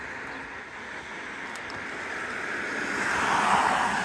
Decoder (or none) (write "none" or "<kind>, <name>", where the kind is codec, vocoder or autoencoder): none